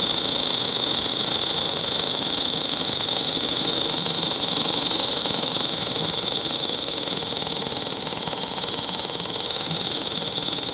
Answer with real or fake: fake